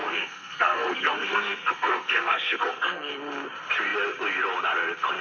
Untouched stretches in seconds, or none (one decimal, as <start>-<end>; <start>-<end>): 3.1-5.2